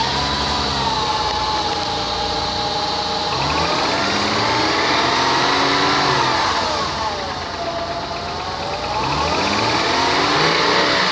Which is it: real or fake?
real